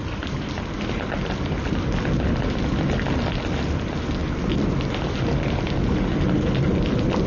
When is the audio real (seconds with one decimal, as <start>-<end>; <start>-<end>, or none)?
0.0-7.3